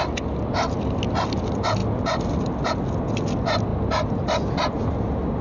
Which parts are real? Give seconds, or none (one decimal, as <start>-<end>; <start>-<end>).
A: 0.0-5.4